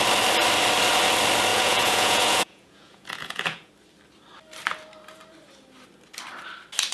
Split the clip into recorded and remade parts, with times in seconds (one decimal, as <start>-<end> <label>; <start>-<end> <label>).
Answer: 0.0-1.5 recorded; 1.5-3.7 remade; 3.7-6.9 recorded

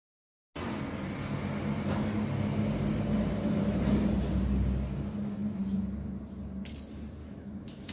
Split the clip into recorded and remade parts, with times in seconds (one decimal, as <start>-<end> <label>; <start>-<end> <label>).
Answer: 0.0-7.2 recorded; 7.2-7.9 remade

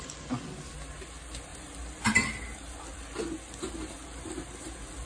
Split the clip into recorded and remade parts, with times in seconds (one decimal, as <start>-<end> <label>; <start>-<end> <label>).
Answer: 0.0-5.1 recorded

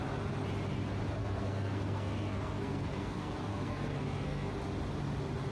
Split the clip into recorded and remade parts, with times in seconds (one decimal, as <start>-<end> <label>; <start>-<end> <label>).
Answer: 0.0-1.2 recorded; 1.2-4.5 remade; 4.5-5.5 recorded